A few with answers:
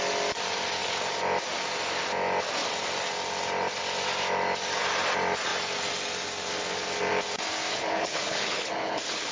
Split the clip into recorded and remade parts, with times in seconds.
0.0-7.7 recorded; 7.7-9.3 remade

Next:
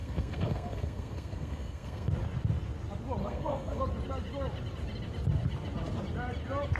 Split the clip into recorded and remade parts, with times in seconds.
0.0-2.1 remade; 2.1-3.2 recorded; 3.2-3.8 remade; 3.8-6.8 recorded